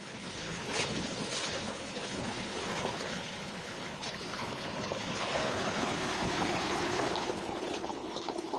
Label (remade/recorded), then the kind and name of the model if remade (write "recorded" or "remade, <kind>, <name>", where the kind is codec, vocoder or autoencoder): remade, codec, HILCodec